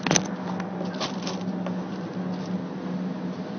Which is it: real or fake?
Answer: real